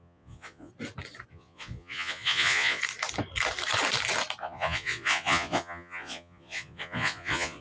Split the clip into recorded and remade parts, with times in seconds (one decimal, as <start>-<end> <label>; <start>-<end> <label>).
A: 0.0-0.7 remade; 0.7-1.3 recorded; 1.3-2.8 remade; 2.8-4.4 recorded; 4.4-7.6 remade